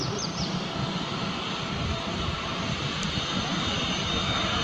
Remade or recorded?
recorded